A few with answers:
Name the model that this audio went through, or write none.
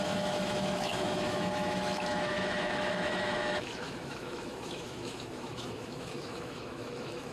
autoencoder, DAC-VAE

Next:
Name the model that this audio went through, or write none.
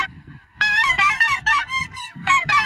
codec, SNAC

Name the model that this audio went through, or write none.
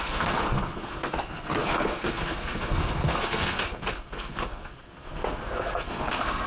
codec, SNAC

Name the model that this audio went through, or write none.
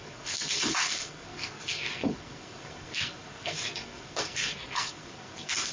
codec, SNAC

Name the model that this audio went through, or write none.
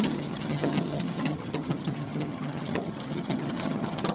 vocoder, HiFi-GAN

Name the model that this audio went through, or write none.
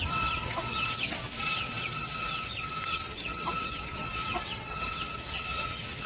vocoder, WaveNeXt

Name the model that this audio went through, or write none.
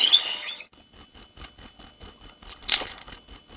codec, HILCodec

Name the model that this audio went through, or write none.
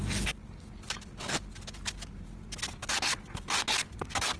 none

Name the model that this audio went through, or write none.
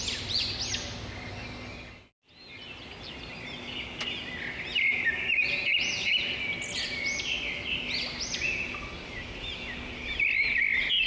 none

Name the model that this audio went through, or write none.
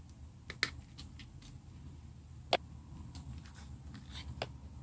none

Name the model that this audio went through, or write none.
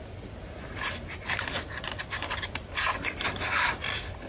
none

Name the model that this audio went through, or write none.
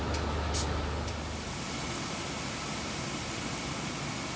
none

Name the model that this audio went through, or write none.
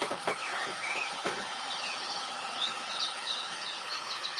codec, HILCodec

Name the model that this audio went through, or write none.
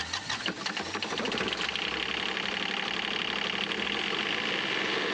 none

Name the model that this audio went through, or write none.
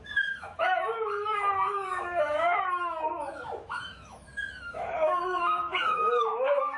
autoencoder, DAC-VAE